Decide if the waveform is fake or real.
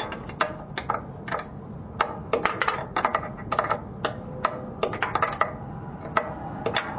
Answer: real